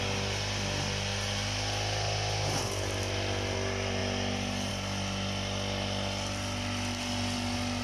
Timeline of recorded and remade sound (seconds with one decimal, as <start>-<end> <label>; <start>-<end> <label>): 0.0-7.8 recorded